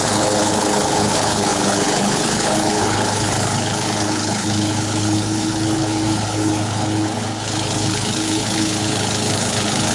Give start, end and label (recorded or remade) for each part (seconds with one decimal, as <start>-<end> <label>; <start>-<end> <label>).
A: 0.0-9.9 remade